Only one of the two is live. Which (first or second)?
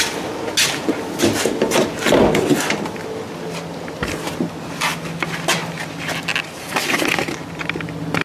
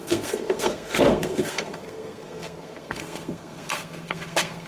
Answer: first